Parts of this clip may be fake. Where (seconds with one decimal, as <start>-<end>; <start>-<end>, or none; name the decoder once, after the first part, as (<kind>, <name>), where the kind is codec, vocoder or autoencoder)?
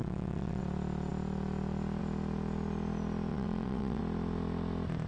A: 0.0-0.6 (vocoder, WaveNeXt); 3.3-4.0